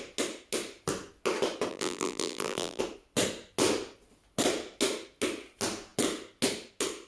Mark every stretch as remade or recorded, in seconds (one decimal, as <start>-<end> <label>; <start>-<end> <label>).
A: 0.0-1.7 recorded; 1.7-2.8 remade; 2.8-7.1 recorded